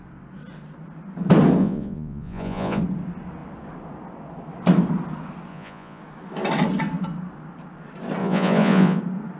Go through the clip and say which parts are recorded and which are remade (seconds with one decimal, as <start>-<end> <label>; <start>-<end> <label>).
0.0-1.6 recorded; 1.6-2.8 remade; 2.8-5.5 recorded; 5.5-6.0 remade; 6.0-8.2 recorded; 8.2-9.0 remade; 9.0-9.4 recorded

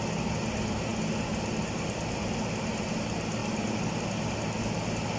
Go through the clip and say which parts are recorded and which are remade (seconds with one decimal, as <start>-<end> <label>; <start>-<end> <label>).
0.0-5.2 recorded

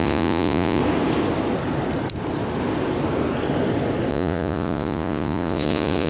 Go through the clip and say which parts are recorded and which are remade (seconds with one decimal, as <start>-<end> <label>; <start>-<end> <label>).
0.0-0.8 remade; 0.8-4.1 recorded; 4.1-6.1 remade

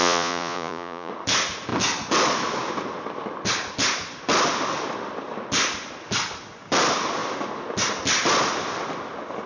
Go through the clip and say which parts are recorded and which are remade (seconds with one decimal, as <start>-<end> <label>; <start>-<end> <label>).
0.0-1.1 remade; 1.1-9.5 recorded